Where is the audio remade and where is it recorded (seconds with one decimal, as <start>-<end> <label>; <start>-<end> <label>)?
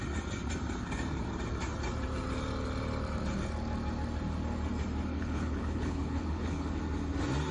0.0-5.1 recorded; 5.1-6.7 remade; 6.7-7.5 recorded